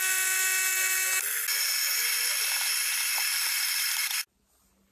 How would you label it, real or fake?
real